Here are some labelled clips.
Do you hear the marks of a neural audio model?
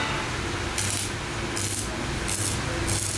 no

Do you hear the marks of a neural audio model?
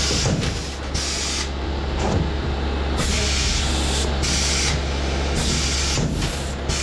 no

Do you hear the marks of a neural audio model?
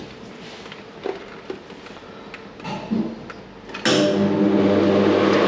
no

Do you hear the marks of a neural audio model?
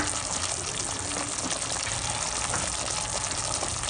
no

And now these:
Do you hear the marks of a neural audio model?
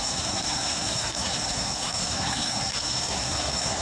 yes